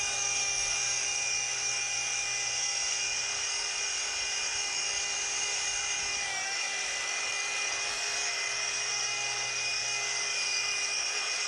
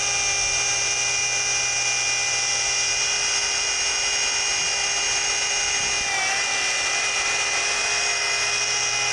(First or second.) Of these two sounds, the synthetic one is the first